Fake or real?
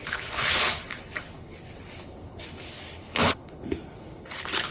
fake